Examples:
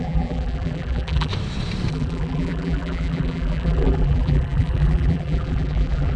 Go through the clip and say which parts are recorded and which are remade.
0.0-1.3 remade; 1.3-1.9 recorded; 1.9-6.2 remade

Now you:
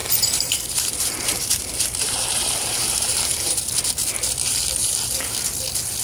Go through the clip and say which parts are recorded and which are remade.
0.0-3.6 remade; 3.6-6.0 recorded

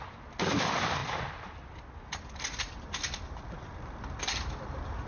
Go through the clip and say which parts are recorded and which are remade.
0.0-5.1 recorded

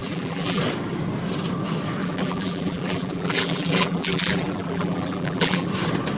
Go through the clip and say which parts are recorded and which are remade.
0.0-0.6 remade; 0.6-2.0 recorded; 2.0-5.7 remade; 5.7-6.2 recorded